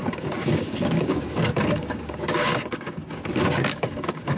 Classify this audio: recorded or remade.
remade